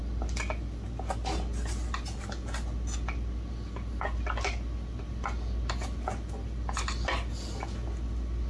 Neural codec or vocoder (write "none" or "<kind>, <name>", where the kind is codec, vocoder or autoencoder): none